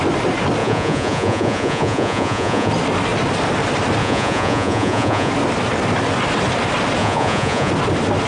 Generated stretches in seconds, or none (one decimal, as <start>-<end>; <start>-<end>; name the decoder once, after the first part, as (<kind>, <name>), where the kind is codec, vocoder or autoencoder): 0.6-2.7 (vocoder, Vocos); 4.0-5.3; 7.0-7.7